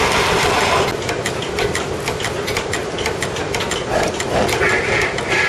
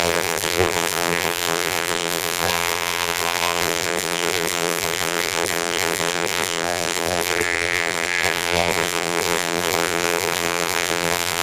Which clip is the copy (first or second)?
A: second